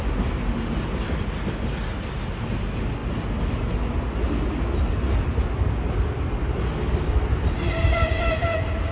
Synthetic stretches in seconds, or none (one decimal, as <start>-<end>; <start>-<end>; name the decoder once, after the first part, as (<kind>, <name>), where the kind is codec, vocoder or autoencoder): none